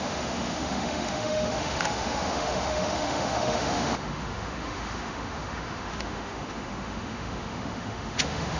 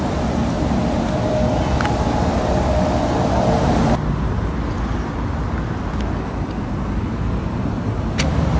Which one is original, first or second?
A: second